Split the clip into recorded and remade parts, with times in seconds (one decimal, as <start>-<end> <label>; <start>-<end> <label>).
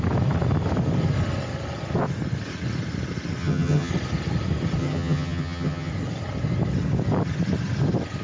0.0-3.4 recorded; 3.4-3.9 remade; 3.9-4.8 recorded; 4.8-5.9 remade; 5.9-8.2 recorded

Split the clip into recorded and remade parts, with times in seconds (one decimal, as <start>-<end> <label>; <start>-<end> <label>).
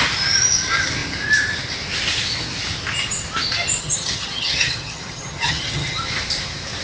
0.0-3.8 recorded; 3.8-6.0 remade; 6.0-6.8 recorded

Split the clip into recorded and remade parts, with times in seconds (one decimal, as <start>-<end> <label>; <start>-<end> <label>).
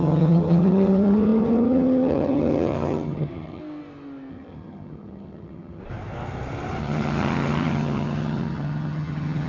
0.0-3.6 remade; 3.6-4.3 recorded; 4.3-5.8 remade; 5.8-6.8 recorded; 6.8-9.5 remade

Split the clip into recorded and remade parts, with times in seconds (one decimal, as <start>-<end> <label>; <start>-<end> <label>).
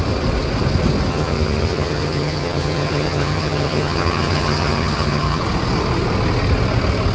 0.0-1.1 recorded; 1.1-5.4 remade; 5.4-7.1 recorded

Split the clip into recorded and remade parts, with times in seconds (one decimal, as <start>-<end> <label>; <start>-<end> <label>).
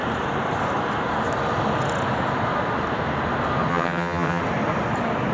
0.0-3.7 recorded; 3.7-4.4 remade; 4.4-5.3 recorded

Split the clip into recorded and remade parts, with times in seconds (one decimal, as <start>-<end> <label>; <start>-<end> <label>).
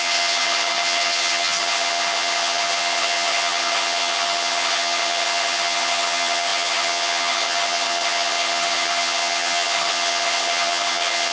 0.0-11.3 remade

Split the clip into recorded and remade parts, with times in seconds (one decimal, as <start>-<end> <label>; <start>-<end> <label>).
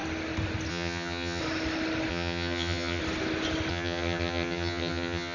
0.0-0.7 recorded; 0.7-1.4 remade; 1.4-2.1 recorded; 2.1-3.0 remade; 3.0-3.7 recorded; 3.7-5.3 remade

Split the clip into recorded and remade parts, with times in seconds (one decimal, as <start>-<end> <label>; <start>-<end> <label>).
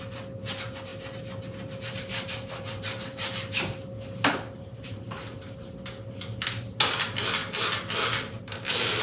0.0-9.0 recorded